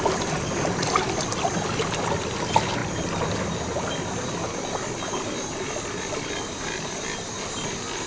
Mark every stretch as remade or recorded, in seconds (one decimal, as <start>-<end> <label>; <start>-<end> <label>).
0.0-8.1 recorded